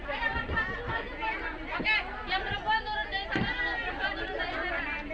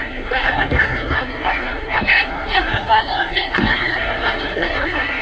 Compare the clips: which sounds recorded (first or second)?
first